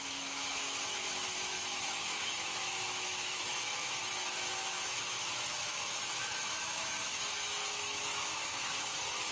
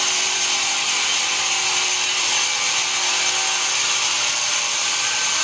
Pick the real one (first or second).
second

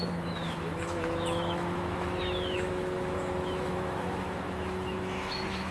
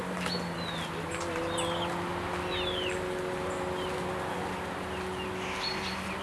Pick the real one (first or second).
second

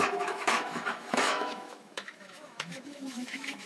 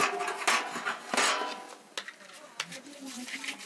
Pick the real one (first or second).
second